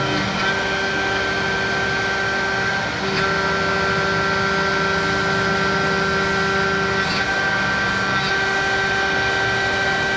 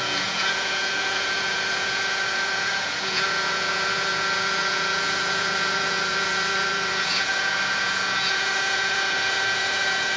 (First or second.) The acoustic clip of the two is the first